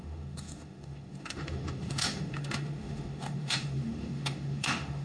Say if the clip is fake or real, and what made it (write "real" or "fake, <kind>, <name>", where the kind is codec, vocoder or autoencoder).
fake, autoencoder, DAC-VAE